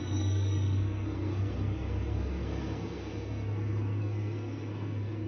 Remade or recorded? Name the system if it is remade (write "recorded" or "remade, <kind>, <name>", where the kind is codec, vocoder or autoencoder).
remade, codec, SNAC